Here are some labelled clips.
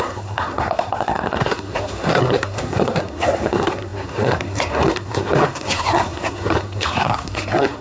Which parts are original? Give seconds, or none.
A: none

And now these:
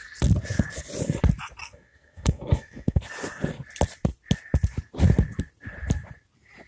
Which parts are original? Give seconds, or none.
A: 0.0-1.6; 3.0-6.7

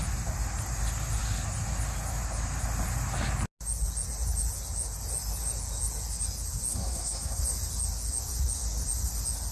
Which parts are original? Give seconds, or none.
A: 0.0-6.7; 7.4-9.5

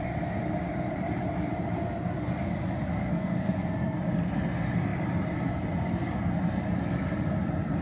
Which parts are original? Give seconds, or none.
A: 0.0-2.9; 4.0-7.8

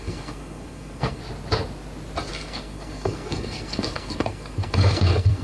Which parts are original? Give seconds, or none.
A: 1.2-2.3